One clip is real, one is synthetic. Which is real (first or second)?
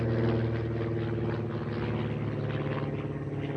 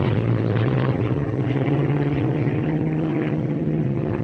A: first